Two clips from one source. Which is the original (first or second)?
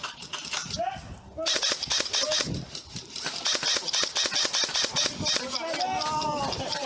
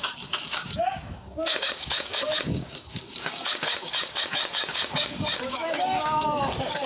first